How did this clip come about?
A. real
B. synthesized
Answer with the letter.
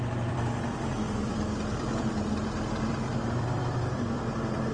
B